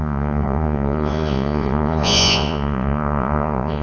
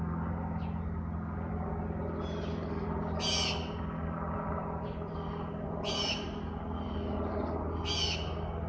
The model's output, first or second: first